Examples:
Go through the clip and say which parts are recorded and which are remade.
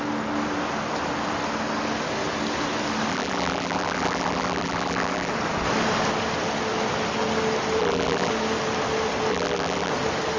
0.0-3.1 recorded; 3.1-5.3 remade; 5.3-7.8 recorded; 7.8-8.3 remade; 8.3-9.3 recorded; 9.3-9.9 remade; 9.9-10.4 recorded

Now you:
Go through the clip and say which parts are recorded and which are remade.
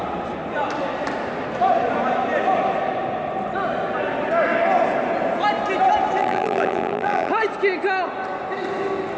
0.0-6.2 recorded; 6.2-7.3 remade; 7.3-9.2 recorded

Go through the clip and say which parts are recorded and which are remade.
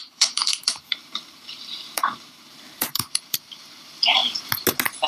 0.0-4.2 remade; 4.2-5.1 recorded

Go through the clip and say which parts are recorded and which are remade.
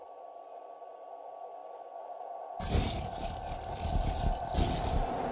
0.0-5.3 recorded